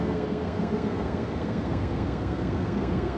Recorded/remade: remade